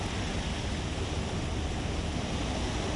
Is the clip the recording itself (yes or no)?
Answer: yes